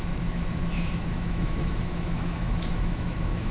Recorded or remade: remade